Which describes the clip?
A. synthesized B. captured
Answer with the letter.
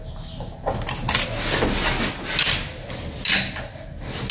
B